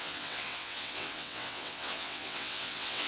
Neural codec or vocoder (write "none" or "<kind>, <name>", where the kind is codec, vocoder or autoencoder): vocoder, WaveNeXt